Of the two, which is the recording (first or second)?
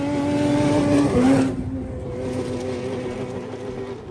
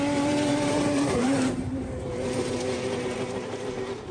first